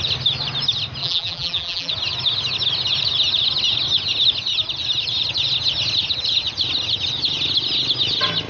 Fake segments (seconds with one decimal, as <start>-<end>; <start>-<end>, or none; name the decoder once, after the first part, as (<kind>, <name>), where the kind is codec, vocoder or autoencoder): 1.0-1.9 (vocoder, BigVGAN v2)